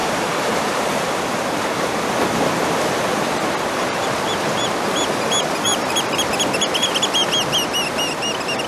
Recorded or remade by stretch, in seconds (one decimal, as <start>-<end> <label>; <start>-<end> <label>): 0.0-2.0 remade; 2.0-5.7 recorded; 5.7-6.3 remade; 6.3-8.7 recorded